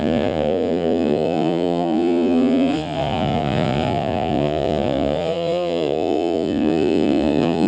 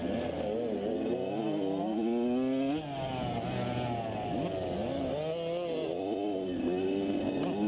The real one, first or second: second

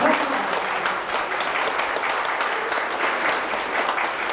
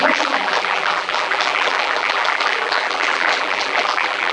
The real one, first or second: first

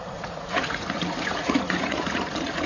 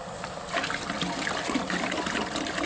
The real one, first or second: second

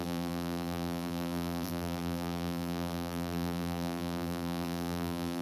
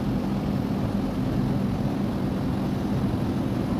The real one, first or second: second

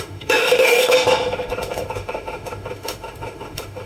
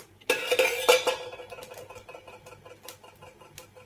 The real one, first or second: second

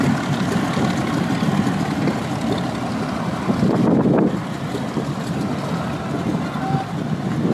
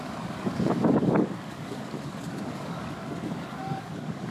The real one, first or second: first